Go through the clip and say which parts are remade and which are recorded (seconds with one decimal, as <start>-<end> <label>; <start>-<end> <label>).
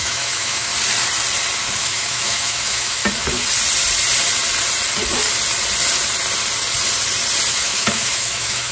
0.0-0.7 remade; 0.7-1.8 recorded; 1.8-3.0 remade; 3.0-7.5 recorded; 7.5-8.7 remade